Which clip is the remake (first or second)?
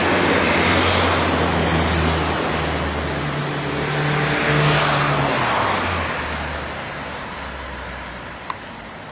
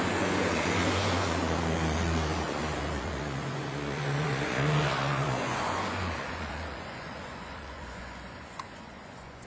second